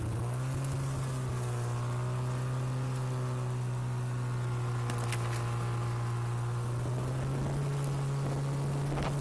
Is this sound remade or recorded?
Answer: recorded